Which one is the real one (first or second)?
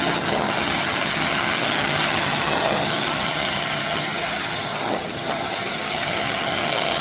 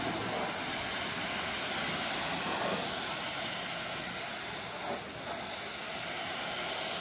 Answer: second